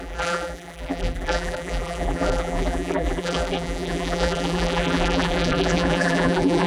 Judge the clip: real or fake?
fake